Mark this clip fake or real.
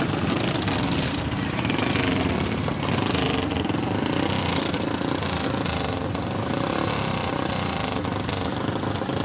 fake